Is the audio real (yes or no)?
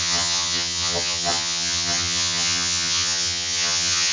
no